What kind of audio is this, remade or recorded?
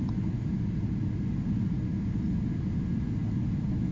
recorded